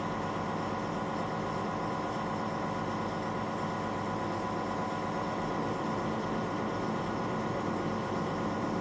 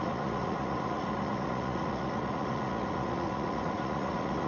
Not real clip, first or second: second